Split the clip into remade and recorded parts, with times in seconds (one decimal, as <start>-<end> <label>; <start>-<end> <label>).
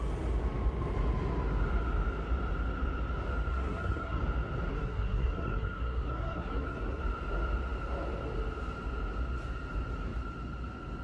0.0-3.5 recorded; 3.5-4.2 remade; 4.2-4.7 recorded; 4.7-7.0 remade; 7.0-11.0 recorded